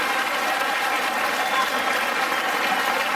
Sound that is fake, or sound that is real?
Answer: real